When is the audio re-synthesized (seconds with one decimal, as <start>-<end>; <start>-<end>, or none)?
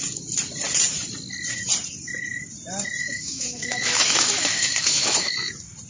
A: 3.0-5.5